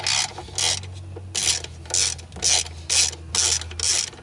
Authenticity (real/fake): real